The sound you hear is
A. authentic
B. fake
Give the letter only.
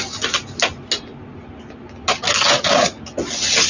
A